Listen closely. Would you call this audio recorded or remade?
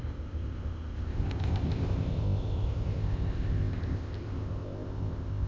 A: remade